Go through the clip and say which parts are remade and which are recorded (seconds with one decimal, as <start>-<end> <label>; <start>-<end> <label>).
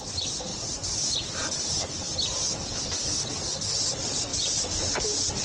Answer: 0.0-5.4 recorded